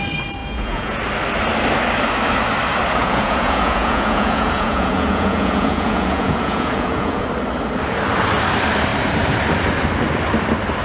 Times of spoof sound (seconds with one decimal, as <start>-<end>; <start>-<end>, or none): 0.4-1.0; 3.0-7.2

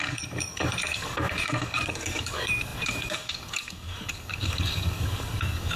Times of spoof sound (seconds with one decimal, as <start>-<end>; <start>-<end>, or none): 0.0-5.8

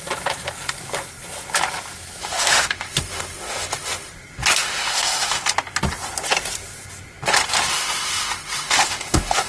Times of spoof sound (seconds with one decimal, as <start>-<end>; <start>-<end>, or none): 2.2-4.1; 4.6-5.4; 7.7-9.5

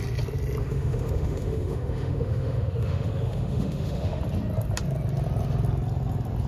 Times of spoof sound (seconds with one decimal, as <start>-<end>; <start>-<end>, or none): 0.6-4.2